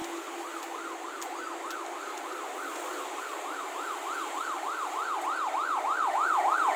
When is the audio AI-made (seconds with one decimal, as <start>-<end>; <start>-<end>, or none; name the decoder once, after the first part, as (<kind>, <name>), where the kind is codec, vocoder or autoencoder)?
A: 3.3-4.4 (vocoder, BigVGAN v2)